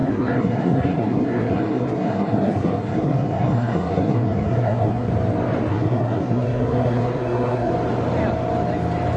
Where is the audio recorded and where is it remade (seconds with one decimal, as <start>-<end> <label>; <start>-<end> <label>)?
0.0-5.1 remade; 5.1-5.7 recorded; 5.7-7.7 remade; 7.7-9.2 recorded